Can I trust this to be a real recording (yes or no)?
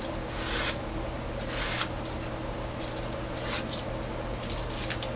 yes